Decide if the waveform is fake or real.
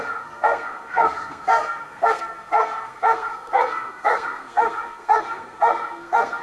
fake